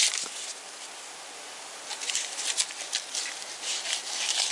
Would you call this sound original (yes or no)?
yes